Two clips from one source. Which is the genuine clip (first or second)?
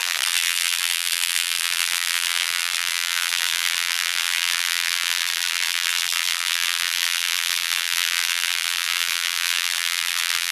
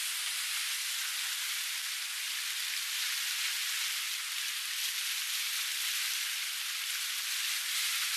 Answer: second